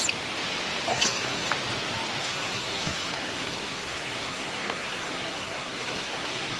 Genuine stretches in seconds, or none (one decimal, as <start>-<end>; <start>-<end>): 0.0-0.9; 1.5-2.2